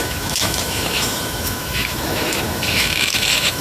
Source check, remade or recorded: remade